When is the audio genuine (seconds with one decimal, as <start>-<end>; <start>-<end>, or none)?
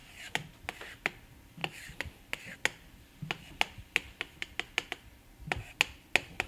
0.0-6.5